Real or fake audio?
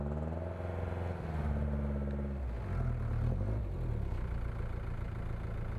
real